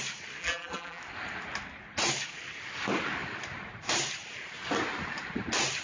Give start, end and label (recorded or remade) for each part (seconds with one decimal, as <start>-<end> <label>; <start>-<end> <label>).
0.0-0.4 recorded; 0.4-1.0 remade; 1.0-5.8 recorded